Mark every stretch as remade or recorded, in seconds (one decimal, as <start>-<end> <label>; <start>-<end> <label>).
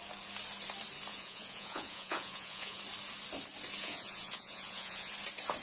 0.0-1.1 recorded; 1.1-2.8 remade; 2.8-3.8 recorded; 3.8-5.1 remade; 5.1-5.6 recorded